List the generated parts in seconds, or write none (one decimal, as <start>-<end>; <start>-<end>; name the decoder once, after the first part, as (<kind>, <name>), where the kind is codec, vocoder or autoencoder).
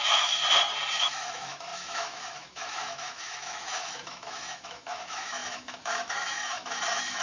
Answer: 0.0-0.4 (autoencoder, DAC-VAE); 0.9-7.2